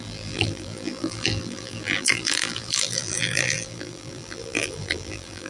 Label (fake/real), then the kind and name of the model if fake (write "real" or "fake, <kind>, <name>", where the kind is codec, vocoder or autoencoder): fake, vocoder, BigVGAN v2